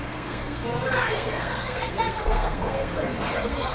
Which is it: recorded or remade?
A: remade